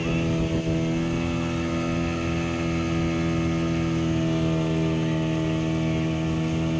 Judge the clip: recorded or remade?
recorded